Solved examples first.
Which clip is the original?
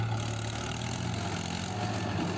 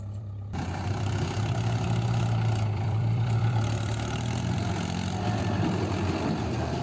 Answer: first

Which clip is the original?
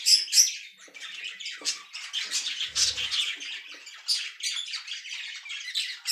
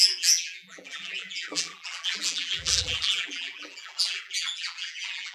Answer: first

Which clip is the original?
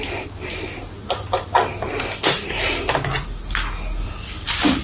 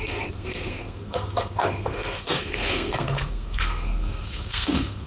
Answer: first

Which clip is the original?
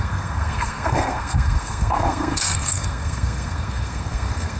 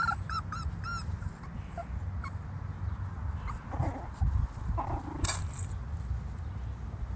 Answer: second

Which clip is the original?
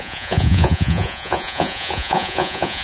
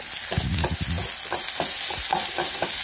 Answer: second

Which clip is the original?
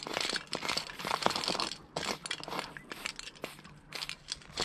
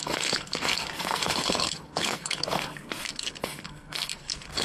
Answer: first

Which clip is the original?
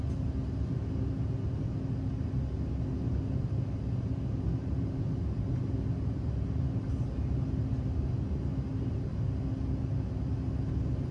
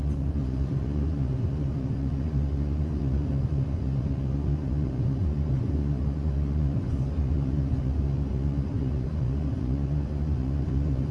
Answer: first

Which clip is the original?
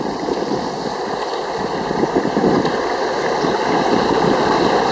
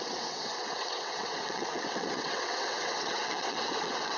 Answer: first